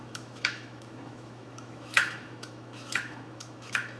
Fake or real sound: fake